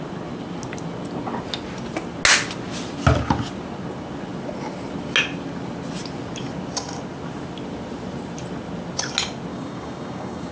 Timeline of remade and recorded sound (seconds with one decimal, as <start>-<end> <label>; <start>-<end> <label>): 0.0-9.5 recorded; 9.5-10.5 remade